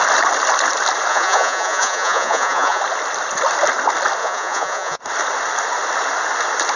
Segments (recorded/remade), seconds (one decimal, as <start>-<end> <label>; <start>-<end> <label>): 0.0-1.1 recorded; 1.1-2.8 remade; 2.8-4.2 recorded; 4.2-5.0 remade; 5.0-6.8 recorded